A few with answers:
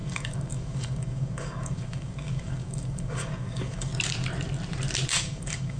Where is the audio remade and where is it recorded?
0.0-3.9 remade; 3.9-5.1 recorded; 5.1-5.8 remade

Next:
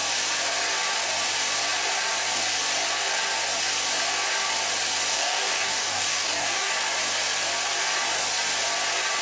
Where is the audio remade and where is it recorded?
0.0-5.1 recorded; 5.1-6.7 remade; 6.7-9.2 recorded

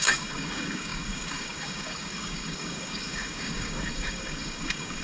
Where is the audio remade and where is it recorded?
0.0-5.0 remade

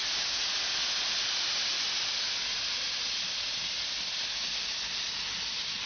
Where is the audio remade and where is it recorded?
0.0-5.9 recorded

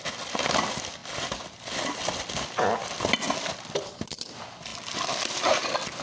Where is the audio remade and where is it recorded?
0.0-6.0 recorded